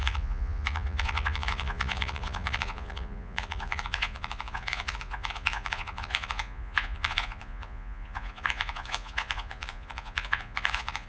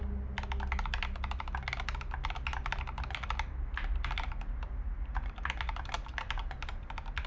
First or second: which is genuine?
second